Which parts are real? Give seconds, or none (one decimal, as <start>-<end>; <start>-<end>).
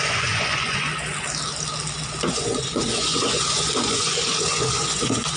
0.9-2.3